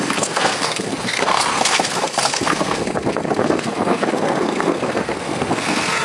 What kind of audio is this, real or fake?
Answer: fake